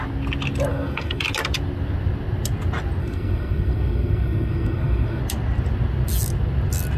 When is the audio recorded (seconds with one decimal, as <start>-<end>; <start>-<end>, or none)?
0.0-0.7; 1.2-3.0; 5.2-7.0